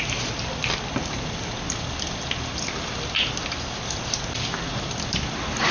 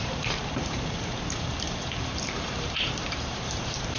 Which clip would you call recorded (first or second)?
first